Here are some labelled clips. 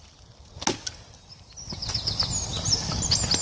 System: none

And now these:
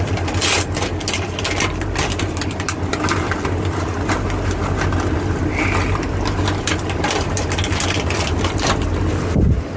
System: none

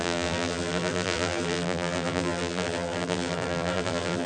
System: vocoder, BigVGAN v2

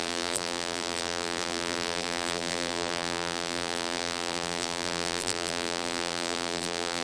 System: vocoder, BigVGAN v2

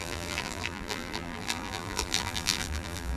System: vocoder, BigVGAN v2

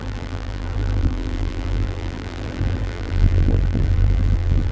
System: vocoder, BigVGAN v2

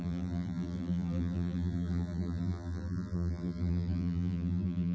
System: vocoder, BigVGAN v2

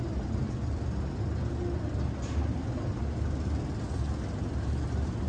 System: none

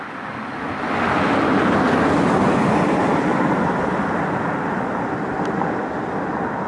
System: none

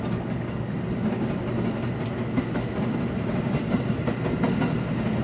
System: none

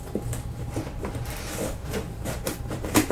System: vocoder, BigVGAN v2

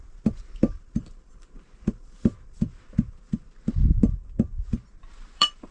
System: vocoder, BigVGAN v2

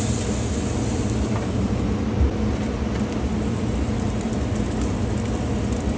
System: none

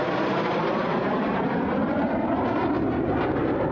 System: vocoder, BigVGAN v2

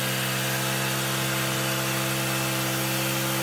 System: none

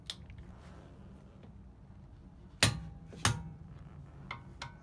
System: none